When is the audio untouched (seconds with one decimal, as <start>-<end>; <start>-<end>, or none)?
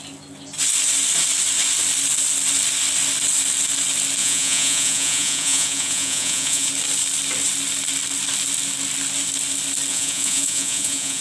0.0-4.2; 6.7-9.9